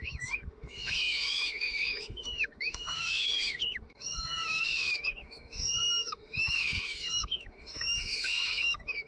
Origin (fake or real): fake